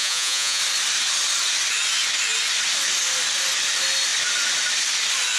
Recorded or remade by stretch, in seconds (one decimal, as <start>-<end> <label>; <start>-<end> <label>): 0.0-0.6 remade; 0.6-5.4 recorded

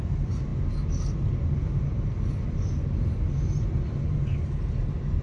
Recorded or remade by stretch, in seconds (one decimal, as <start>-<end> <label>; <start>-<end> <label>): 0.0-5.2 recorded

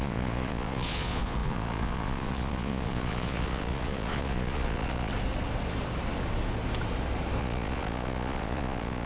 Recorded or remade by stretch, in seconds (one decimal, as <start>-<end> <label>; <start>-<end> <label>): 0.0-5.1 remade; 5.1-7.4 recorded; 7.4-9.1 remade